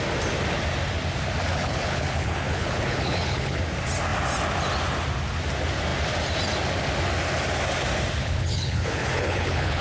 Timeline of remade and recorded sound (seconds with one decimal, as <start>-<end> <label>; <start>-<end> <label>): 0.0-1.5 recorded; 1.5-3.6 remade; 3.6-8.2 recorded; 8.2-9.8 remade